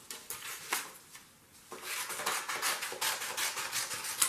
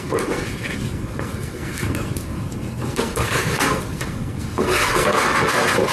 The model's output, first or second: second